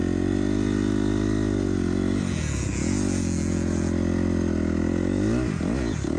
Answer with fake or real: real